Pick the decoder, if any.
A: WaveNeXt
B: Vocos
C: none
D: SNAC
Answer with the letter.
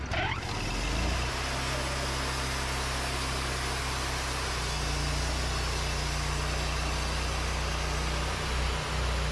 C